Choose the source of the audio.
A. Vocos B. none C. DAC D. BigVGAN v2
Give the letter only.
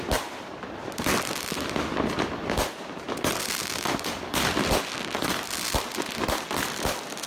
B